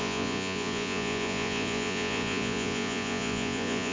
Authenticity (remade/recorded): remade